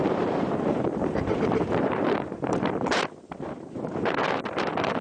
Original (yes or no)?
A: no